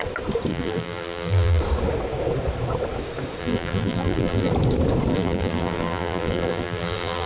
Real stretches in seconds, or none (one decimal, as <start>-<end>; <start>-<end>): 0.0-0.5; 1.6-3.4; 4.5-5.1